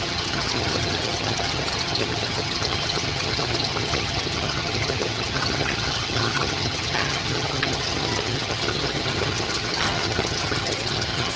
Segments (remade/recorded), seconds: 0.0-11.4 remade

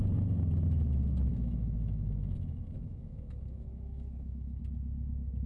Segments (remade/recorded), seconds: 0.0-1.3 recorded; 1.3-4.6 remade; 4.6-5.5 recorded

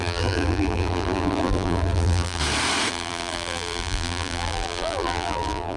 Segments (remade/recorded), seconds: 0.0-2.4 remade; 2.4-2.9 recorded; 2.9-5.8 remade